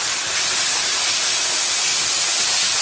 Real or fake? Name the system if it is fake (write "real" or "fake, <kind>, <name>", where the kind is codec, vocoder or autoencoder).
real